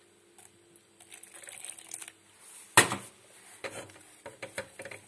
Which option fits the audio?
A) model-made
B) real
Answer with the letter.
B